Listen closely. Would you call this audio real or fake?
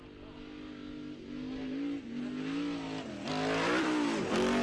real